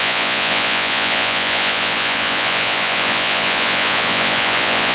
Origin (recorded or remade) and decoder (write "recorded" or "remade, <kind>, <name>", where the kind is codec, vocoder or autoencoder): remade, vocoder, Vocos